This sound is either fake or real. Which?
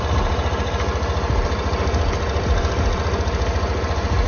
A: real